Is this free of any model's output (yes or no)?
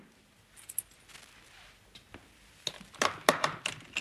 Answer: yes